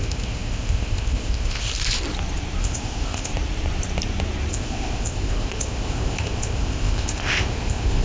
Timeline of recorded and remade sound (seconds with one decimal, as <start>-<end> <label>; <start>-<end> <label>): 0.0-1.7 remade; 1.7-2.6 recorded; 2.6-3.3 remade; 3.3-4.5 recorded; 4.5-8.0 remade